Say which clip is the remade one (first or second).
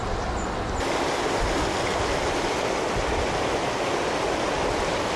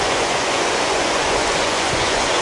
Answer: second